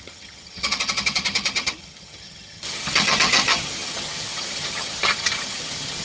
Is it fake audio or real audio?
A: fake